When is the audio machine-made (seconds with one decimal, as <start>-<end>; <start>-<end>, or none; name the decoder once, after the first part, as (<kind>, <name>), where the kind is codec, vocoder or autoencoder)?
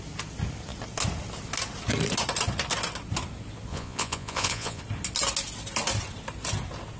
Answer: 3.7-4.8 (vocoder, Vocos)